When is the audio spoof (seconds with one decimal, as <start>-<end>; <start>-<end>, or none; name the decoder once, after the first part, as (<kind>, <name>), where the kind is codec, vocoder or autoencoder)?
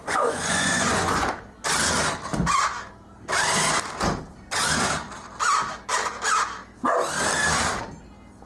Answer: 0.0-1.3 (vocoder, Vocos)